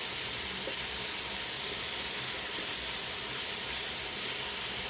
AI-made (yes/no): no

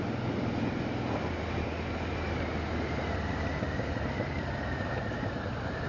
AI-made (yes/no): no